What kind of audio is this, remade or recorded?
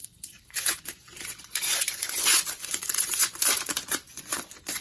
remade